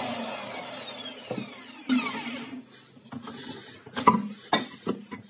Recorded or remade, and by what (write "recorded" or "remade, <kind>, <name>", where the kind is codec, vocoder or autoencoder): recorded